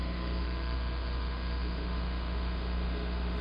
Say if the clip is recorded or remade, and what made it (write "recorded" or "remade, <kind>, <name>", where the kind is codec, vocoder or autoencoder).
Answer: remade, autoencoder, DAC-VAE